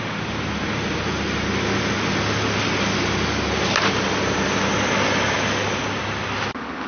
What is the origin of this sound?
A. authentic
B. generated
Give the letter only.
A